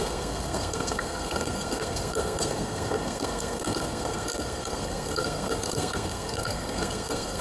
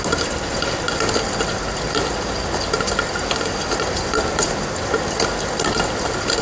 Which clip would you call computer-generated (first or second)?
first